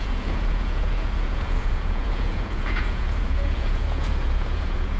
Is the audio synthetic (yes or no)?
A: yes